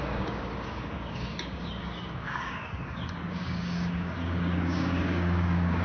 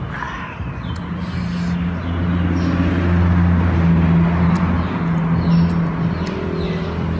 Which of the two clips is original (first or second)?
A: second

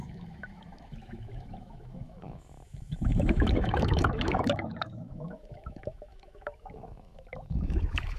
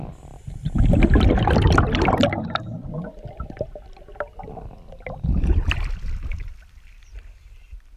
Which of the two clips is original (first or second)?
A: second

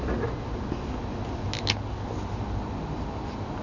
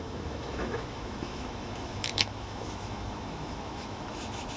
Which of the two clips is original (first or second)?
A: first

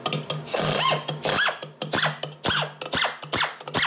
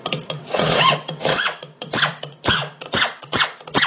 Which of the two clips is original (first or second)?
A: first